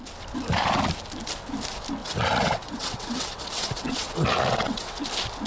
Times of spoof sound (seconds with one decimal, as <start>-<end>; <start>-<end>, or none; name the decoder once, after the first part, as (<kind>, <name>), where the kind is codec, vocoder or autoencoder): 2.0-5.0 (vocoder, WaveNeXt)